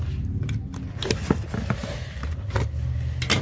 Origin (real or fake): real